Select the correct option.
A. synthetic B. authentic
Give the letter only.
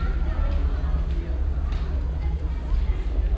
B